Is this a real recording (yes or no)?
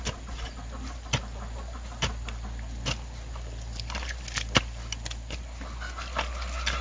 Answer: yes